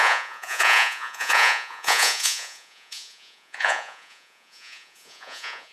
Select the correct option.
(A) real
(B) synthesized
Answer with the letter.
B